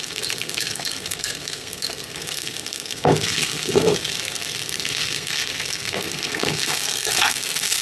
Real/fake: fake